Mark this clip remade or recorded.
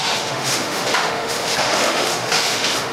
remade